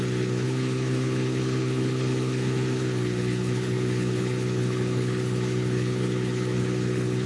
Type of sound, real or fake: fake